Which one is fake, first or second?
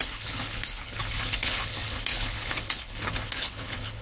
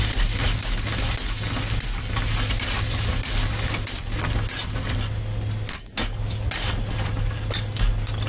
first